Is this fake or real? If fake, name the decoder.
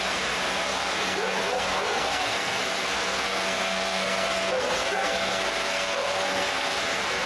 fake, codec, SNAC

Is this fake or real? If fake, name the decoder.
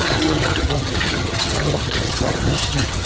fake, vocoder, HiFi-GAN